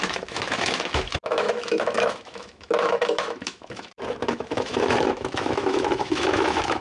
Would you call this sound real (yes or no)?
no